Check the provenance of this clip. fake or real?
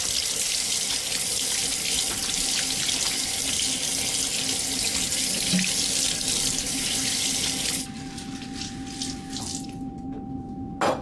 real